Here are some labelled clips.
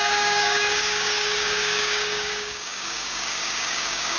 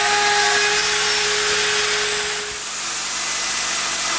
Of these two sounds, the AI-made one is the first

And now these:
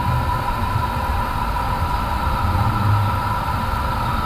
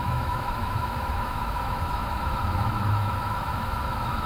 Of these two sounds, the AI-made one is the second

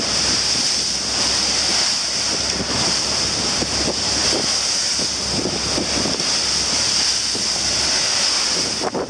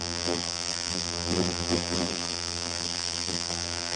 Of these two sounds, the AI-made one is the second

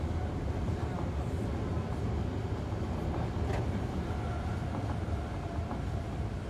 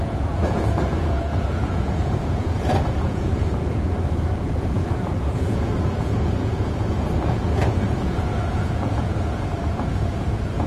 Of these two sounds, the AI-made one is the second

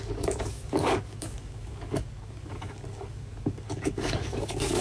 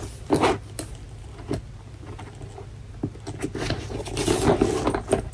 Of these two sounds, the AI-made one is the first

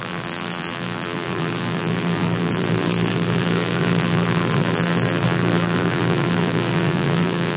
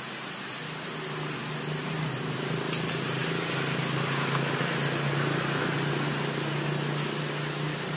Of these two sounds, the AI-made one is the first